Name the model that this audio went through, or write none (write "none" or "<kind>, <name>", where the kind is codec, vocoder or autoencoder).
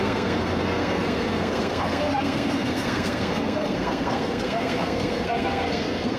codec, SNAC